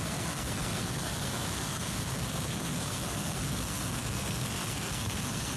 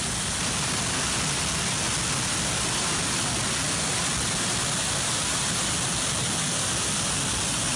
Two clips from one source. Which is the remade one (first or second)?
first